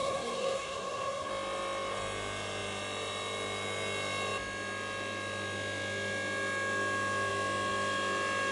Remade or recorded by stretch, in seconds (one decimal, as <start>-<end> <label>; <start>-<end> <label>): 0.0-1.3 remade; 1.3-8.5 recorded